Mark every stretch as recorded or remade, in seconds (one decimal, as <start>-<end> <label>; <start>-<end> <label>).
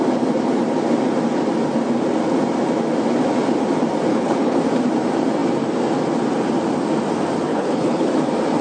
0.0-4.1 recorded; 4.1-4.6 remade; 4.6-7.5 recorded; 7.5-8.1 remade; 8.1-8.6 recorded